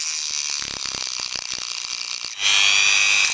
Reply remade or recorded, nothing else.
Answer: recorded